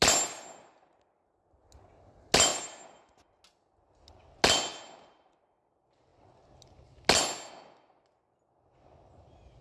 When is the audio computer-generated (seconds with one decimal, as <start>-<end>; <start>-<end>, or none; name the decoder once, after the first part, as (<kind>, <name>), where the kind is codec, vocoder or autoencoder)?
none